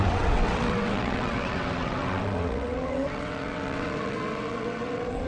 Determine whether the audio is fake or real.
fake